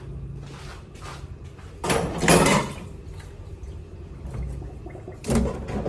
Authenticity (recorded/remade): recorded